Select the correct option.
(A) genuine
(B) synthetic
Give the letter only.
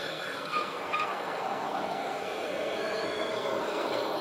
B